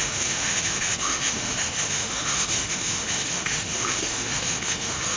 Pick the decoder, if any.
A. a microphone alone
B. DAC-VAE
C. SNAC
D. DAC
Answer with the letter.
B